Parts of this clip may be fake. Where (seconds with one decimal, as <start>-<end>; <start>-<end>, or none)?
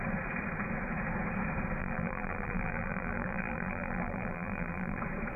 1.8-5.0